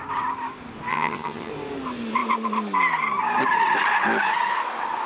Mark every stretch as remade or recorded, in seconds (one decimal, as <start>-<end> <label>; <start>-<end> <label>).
0.0-0.9 recorded; 0.9-1.5 remade; 1.5-5.1 recorded